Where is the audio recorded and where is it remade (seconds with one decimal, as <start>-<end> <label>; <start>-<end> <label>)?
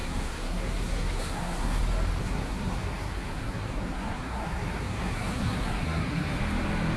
0.0-1.8 remade; 1.8-2.2 recorded; 2.2-6.4 remade; 6.4-7.0 recorded